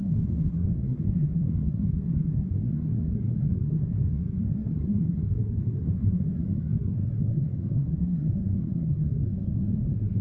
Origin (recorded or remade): remade